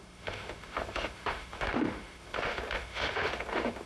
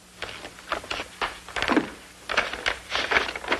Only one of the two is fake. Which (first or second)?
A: first